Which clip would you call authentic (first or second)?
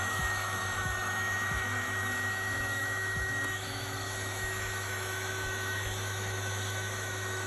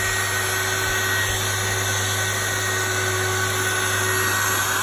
second